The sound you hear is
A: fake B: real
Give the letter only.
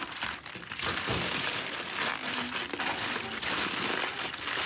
B